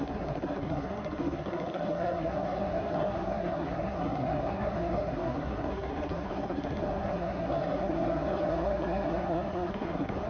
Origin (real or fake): fake